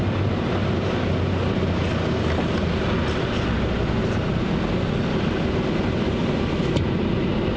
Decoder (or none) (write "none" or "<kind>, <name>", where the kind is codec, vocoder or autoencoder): none